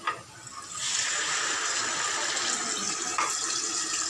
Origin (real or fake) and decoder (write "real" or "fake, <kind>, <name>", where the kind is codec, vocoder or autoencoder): real